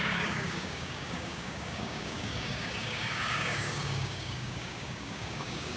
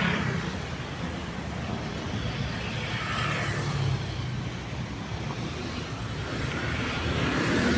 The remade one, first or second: first